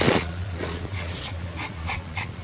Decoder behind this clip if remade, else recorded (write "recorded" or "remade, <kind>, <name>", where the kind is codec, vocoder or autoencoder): remade, vocoder, Vocos